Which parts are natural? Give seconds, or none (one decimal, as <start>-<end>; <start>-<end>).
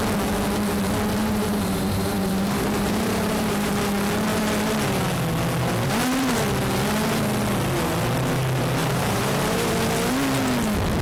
0.0-1.2; 3.7-8.8; 9.7-11.0